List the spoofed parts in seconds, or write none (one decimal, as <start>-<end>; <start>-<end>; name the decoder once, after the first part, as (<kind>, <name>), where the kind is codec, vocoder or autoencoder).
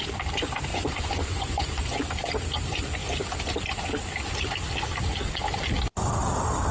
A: 0.7-2.0 (vocoder, Vocos)